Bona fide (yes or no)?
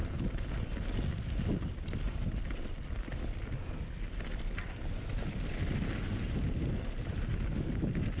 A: yes